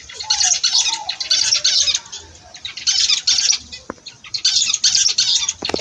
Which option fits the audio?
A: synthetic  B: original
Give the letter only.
B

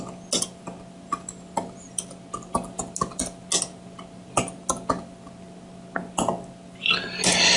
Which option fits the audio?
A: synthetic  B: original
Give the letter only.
B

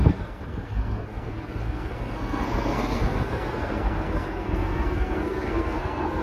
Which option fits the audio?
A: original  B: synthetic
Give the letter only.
B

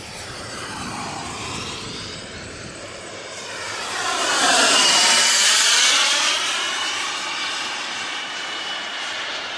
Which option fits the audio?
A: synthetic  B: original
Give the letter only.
A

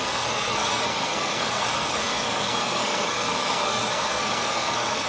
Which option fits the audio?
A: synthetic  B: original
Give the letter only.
A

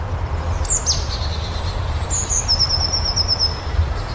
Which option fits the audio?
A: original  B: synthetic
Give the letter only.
A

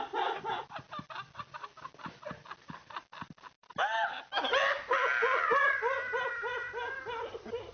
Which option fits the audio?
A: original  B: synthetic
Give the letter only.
A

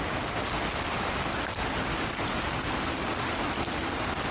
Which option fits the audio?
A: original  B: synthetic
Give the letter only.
A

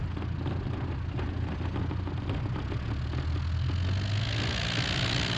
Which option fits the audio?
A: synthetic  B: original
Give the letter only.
B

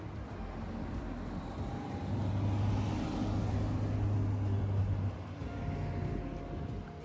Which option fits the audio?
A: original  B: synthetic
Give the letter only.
A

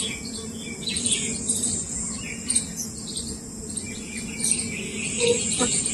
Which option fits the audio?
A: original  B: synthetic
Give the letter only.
B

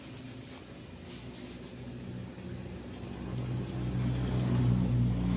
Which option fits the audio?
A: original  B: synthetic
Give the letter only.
A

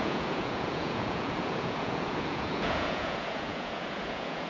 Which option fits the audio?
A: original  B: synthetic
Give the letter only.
B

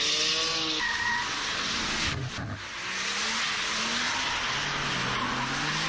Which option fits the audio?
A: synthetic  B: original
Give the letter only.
B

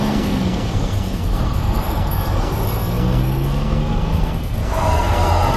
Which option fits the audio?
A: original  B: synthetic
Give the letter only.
B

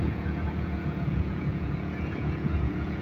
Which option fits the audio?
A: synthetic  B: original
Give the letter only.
A